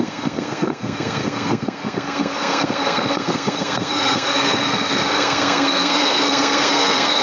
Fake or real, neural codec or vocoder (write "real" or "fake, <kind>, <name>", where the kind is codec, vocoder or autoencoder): fake, codec, SNAC